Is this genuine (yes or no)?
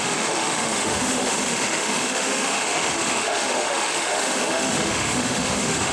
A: no